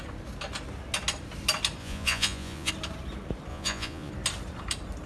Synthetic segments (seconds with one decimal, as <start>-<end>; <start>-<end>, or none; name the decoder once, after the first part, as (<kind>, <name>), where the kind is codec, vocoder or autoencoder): 1.8-2.7 (vocoder, Vocos); 3.5-4.1